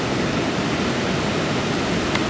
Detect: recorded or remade recorded